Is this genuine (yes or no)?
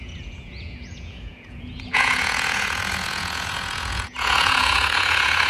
no